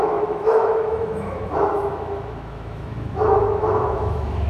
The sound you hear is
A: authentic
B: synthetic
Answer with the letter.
B